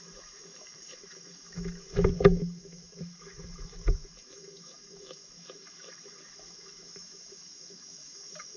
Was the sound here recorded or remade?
remade